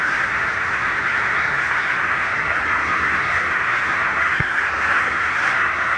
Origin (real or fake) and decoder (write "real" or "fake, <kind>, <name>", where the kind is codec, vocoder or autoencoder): fake, codec, SNAC